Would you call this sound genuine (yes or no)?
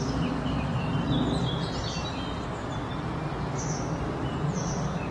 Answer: yes